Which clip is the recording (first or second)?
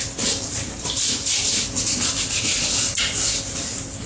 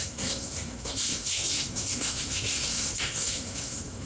first